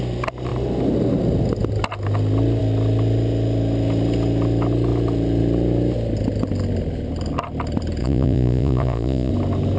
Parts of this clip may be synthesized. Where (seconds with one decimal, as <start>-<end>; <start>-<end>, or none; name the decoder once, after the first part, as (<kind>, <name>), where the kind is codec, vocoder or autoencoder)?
8.0-9.3 (vocoder, Vocos)